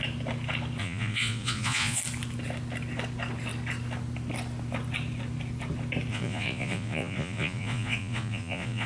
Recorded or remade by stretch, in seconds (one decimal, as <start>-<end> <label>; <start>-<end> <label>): 0.0-0.8 recorded; 0.8-2.0 remade; 2.0-6.1 recorded; 6.1-8.9 remade